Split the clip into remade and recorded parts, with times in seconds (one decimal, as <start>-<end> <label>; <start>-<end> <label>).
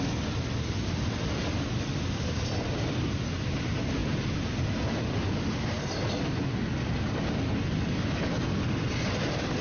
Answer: 0.0-9.6 recorded